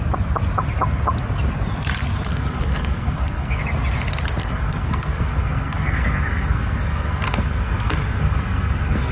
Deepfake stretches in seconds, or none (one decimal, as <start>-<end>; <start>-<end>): 2.3-3.6; 4.4-9.1